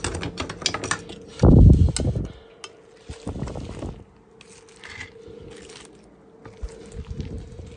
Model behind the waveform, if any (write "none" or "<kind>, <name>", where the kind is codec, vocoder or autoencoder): none